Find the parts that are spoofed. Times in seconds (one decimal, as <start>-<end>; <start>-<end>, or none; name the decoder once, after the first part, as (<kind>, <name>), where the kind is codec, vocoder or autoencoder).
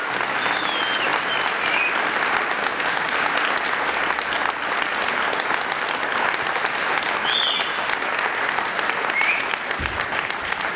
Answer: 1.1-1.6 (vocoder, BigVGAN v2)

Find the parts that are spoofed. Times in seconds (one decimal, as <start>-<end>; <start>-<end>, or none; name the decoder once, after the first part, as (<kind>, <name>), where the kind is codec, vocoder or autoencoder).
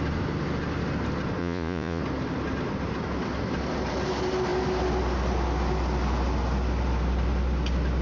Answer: 1.4-2.0 (vocoder, Vocos)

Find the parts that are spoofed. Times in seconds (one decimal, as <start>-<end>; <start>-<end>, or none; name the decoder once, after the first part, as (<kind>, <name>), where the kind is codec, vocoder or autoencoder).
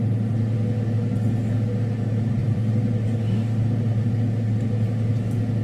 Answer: 2.4-2.9 (vocoder, BigVGAN v2)